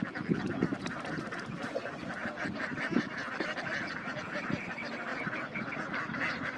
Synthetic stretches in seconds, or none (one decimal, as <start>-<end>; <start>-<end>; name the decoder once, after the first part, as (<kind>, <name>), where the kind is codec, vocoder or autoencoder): 0.0-2.2 (vocoder, BigVGAN v2); 3.4-5.1; 5.6-6.6